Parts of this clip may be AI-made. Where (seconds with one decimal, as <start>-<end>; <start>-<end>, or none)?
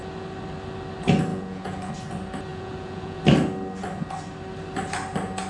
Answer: 1.3-1.9; 2.5-3.2